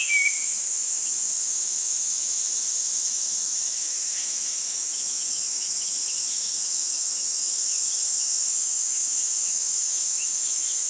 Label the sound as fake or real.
fake